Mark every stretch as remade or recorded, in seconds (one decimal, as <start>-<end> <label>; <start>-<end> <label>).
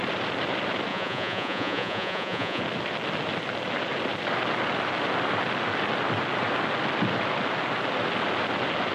0.0-0.9 recorded; 0.9-2.6 remade; 2.6-8.9 recorded